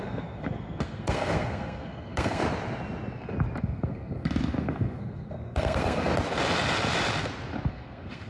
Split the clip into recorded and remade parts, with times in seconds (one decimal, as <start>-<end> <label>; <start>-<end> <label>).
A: 0.0-2.4 remade; 2.4-3.6 recorded; 3.6-6.1 remade; 6.1-7.7 recorded; 7.7-8.3 remade